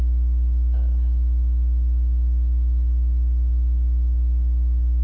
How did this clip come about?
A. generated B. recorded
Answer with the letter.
B